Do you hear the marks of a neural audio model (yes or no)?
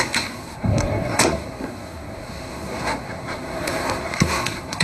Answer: yes